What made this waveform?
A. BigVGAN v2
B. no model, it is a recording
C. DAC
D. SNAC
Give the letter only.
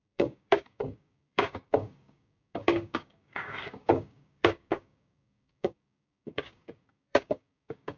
C